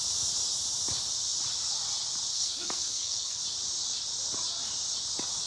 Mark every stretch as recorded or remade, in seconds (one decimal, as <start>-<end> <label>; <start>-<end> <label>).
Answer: 0.0-2.3 recorded; 2.3-3.4 remade; 3.4-5.5 recorded